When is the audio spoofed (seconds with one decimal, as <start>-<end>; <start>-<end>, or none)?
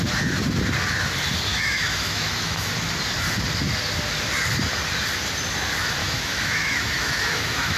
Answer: 1.5-2.7; 6.0-7.8